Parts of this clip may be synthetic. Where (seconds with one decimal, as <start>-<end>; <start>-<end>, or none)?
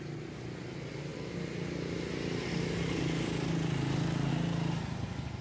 none